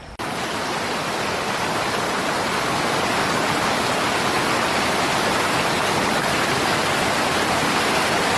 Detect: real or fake real